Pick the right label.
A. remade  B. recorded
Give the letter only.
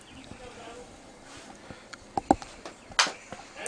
B